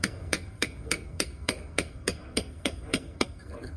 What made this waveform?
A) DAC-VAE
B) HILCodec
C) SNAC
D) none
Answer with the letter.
C